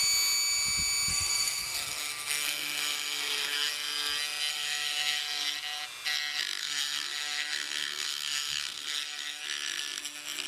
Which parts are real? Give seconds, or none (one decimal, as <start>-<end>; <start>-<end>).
0.0-1.1; 3.7-4.5; 5.2-6.6; 9.4-10.5